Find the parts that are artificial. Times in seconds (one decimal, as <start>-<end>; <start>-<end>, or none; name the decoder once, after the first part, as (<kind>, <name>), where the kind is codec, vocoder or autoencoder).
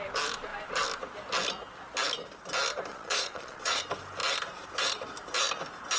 2.9-3.8 (vocoder, Vocos)